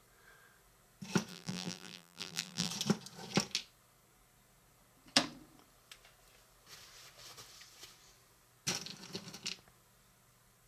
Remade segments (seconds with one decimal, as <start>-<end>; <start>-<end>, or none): 1.3-2.7